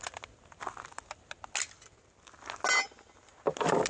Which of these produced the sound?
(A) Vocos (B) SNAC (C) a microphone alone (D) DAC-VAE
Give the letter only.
C